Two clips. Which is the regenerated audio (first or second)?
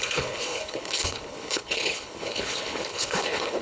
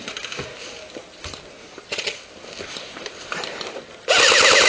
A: first